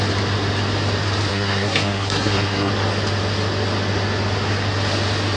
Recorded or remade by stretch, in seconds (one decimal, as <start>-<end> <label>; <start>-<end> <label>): 0.0-1.3 recorded; 1.3-2.7 remade; 2.7-5.4 recorded